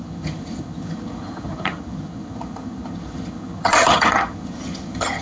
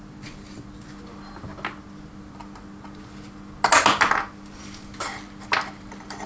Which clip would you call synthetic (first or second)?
first